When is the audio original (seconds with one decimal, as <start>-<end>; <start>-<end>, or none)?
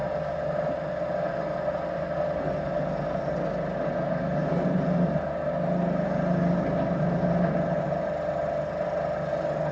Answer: 0.0-9.7